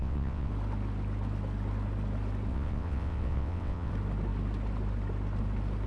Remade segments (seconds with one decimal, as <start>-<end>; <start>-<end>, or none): 0.0-0.5; 2.5-3.9